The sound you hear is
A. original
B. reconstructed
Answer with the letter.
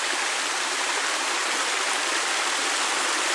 A